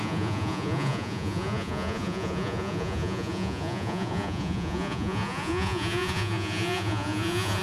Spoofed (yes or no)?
yes